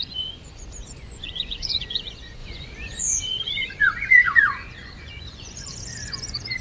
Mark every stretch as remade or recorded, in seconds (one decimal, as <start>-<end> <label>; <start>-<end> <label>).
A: 0.0-6.6 remade